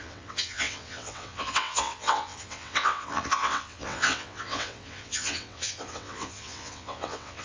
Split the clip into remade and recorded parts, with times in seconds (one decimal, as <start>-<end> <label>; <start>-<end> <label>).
0.0-7.4 remade